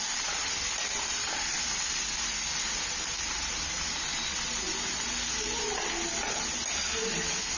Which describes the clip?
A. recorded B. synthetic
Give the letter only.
A